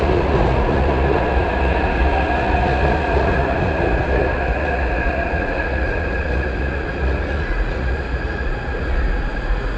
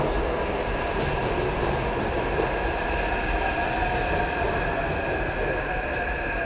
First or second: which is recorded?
second